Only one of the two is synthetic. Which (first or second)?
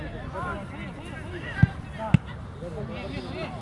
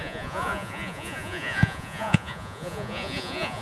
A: second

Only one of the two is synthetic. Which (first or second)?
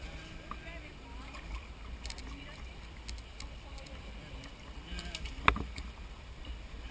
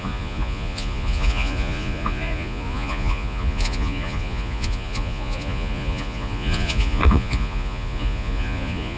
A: second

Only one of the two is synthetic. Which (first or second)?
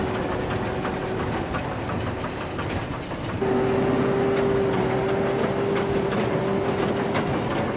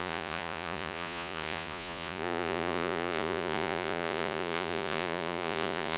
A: second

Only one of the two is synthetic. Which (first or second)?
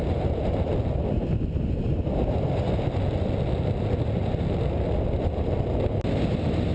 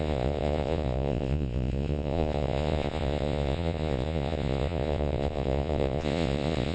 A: second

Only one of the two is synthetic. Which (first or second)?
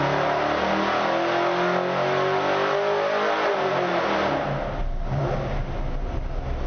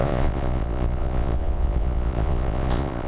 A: second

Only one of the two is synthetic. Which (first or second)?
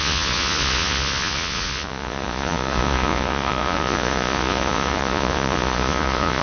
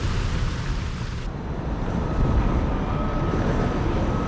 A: first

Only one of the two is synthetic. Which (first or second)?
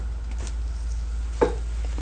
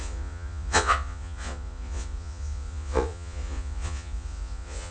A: second